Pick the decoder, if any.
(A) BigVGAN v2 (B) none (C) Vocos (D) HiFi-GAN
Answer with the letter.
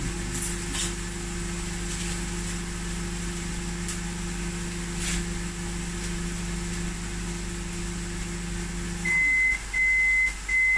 B